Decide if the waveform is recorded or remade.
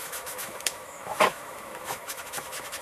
remade